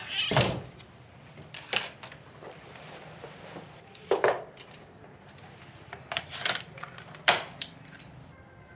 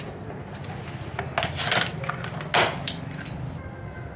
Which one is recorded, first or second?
second